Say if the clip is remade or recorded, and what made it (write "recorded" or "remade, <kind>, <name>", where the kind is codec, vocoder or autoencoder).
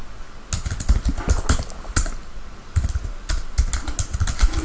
recorded